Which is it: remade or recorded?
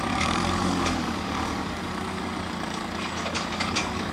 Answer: remade